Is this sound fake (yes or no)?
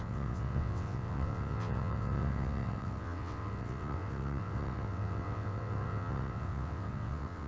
yes